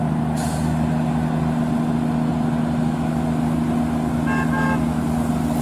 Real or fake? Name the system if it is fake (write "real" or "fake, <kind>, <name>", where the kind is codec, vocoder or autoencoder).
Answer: real